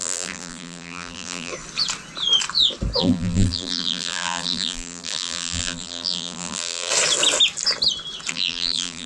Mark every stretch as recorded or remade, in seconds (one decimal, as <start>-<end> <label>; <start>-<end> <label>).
0.0-1.5 remade; 1.5-3.0 recorded; 3.0-6.9 remade; 6.9-8.3 recorded; 8.3-9.1 remade